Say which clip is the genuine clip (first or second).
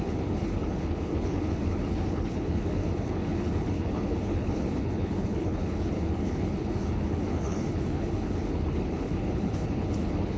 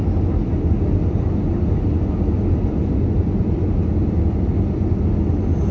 second